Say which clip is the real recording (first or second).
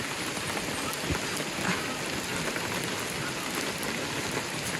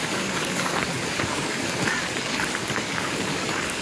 first